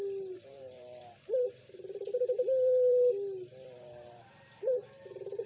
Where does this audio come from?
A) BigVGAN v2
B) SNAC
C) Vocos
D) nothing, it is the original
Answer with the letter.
A